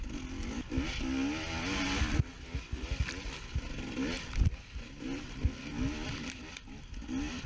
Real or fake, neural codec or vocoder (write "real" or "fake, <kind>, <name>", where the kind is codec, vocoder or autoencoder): real